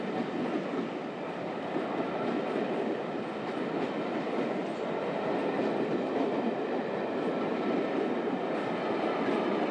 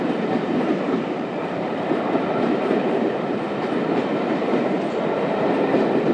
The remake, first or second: second